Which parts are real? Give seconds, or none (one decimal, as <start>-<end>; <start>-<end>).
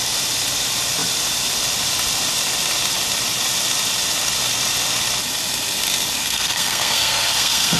0.0-6.2